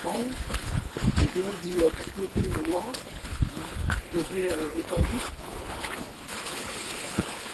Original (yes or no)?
no